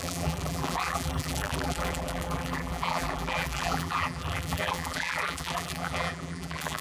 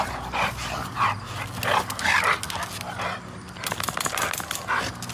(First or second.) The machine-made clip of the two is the first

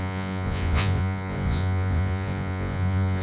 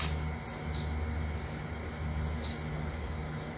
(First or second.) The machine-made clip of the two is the first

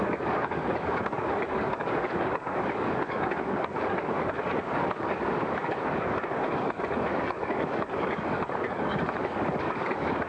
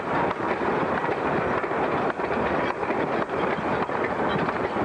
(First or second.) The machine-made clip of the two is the first